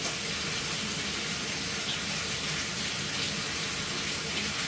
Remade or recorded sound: recorded